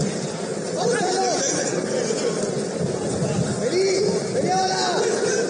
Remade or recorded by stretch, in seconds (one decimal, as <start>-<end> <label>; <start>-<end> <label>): 0.0-0.5 recorded; 0.5-1.2 remade; 1.2-5.5 recorded